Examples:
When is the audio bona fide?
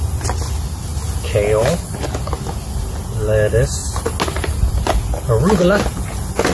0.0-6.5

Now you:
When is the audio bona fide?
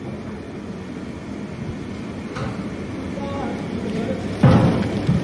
0.0-2.4; 4.3-5.2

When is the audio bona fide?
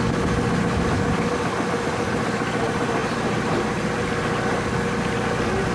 0.0-5.7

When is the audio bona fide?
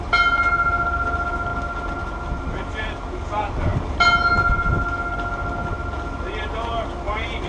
0.0-7.5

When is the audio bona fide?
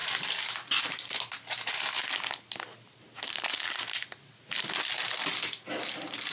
1.3-2.0; 3.6-6.3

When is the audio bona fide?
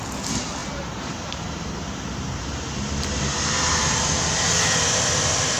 0.0-0.6; 4.0-5.6